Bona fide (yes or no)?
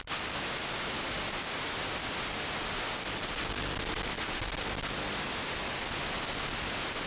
yes